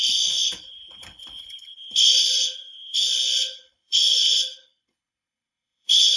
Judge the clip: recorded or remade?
remade